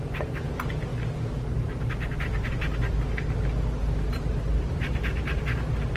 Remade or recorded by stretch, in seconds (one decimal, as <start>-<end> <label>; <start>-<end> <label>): 0.0-4.5 recorded; 4.5-5.4 remade; 5.4-6.0 recorded